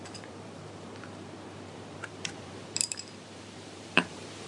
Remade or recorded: remade